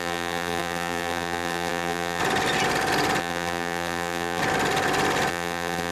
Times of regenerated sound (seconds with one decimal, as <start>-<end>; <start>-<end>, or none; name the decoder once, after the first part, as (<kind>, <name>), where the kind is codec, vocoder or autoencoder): 0.0-2.2 (vocoder, BigVGAN v2); 3.2-4.4; 5.3-5.9